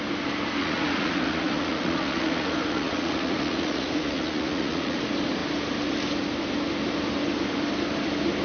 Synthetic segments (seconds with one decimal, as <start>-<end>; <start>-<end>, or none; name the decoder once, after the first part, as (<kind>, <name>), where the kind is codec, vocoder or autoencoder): 0.6-5.0 (vocoder, Vocos)